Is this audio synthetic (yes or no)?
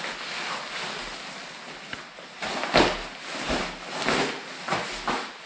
no